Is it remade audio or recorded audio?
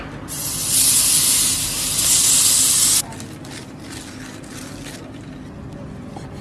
recorded